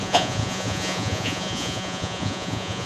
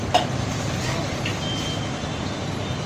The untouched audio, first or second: second